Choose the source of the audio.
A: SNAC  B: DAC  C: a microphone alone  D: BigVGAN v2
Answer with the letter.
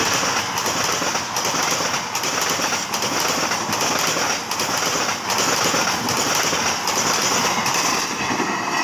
C